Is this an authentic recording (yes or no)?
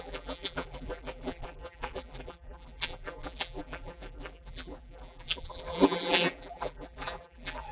no